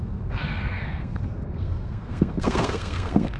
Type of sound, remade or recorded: remade